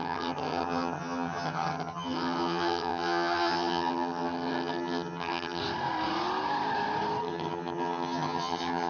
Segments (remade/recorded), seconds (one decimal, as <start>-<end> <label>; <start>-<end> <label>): 0.0-5.6 remade; 5.6-7.2 recorded; 7.2-8.9 remade